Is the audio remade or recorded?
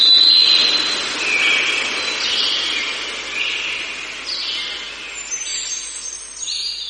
recorded